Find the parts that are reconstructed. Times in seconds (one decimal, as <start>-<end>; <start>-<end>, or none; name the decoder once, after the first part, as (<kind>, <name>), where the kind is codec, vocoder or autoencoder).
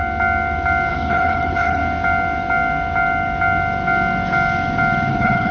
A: 0.9-1.8 (codec, HILCodec); 5.1-5.5